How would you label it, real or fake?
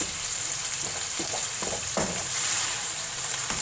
fake